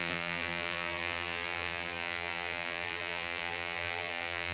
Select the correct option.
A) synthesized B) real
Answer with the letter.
A